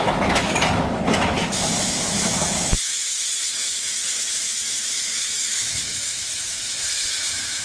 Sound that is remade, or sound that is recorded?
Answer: remade